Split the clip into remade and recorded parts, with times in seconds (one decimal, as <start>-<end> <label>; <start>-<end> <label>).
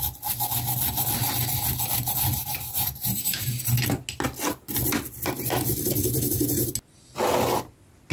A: 0.0-2.4 recorded; 2.4-3.6 remade; 3.6-8.1 recorded